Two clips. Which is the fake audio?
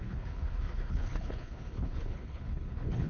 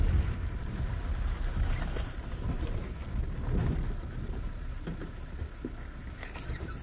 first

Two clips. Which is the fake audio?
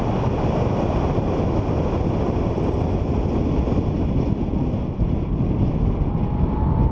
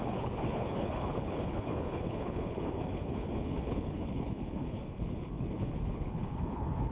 second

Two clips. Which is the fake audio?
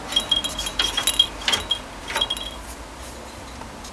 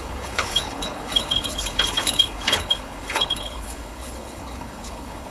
second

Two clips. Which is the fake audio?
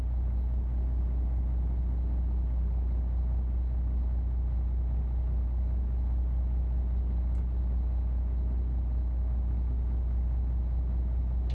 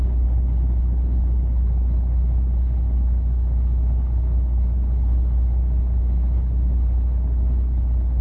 second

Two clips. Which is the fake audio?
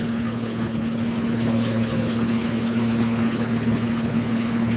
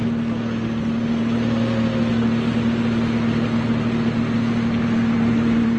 first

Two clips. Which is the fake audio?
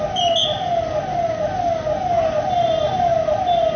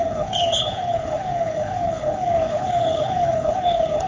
second